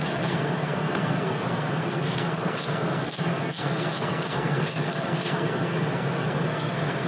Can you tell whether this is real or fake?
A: fake